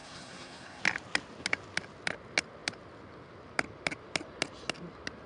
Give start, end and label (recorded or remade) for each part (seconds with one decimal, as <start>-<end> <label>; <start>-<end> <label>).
0.0-0.8 remade; 0.8-5.3 recorded